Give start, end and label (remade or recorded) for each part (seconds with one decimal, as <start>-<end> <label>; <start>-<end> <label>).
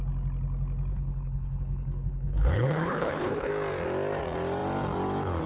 0.0-0.9 recorded; 0.9-3.5 remade; 3.5-5.5 recorded